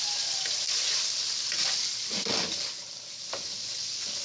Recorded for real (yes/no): yes